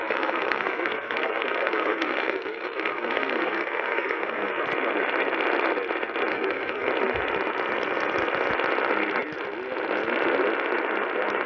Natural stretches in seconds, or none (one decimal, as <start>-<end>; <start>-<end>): 4.6-6.3; 6.9-11.5